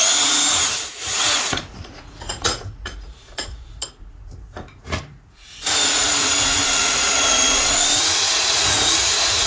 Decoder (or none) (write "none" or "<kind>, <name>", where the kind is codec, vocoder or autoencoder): vocoder, Vocos